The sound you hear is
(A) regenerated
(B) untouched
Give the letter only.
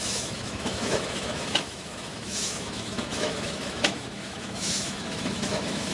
A